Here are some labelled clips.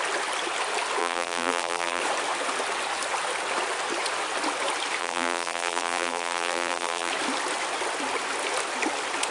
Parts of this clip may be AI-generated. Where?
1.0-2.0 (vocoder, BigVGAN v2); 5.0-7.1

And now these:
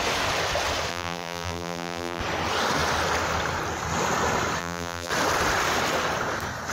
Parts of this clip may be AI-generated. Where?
0.9-2.2 (vocoder, BigVGAN v2); 4.6-5.1

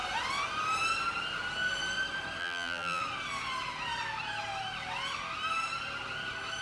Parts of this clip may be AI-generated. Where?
2.4-3.0 (vocoder, BigVGAN v2)

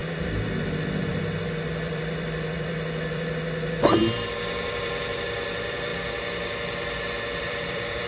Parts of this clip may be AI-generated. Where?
0.0-5.9 (vocoder, BigVGAN v2); 7.3-8.1

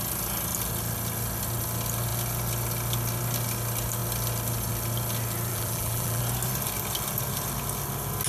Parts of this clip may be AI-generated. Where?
5.5-6.2 (vocoder, BigVGAN v2)

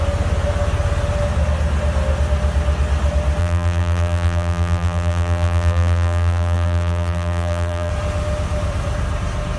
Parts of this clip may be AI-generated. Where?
3.4-7.9 (vocoder, BigVGAN v2)

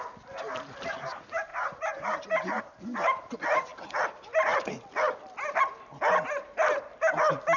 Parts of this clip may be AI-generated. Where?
1.5-2.6 (vocoder, BigVGAN v2)